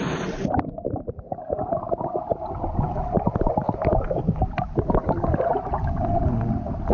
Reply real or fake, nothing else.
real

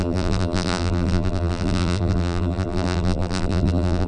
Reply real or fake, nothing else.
fake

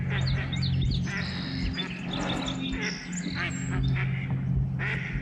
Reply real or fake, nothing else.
real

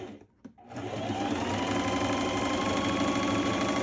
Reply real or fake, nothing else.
real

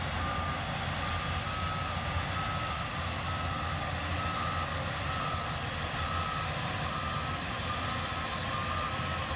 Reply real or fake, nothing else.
real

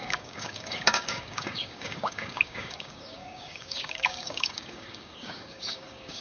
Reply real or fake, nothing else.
fake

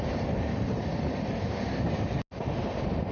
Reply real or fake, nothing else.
real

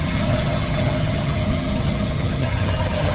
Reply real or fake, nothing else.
fake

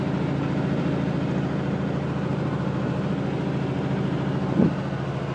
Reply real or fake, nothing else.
real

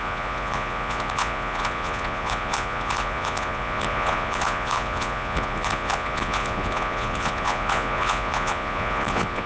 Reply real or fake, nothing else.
fake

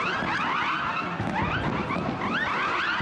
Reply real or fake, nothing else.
real